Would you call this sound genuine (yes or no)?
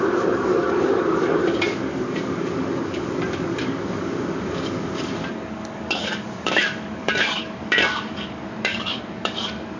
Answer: no